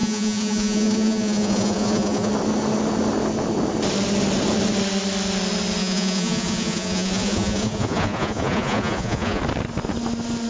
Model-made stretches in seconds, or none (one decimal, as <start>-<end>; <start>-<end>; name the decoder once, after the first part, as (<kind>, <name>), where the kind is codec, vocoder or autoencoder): 0.0-2.3 (vocoder, Vocos); 5.8-9.4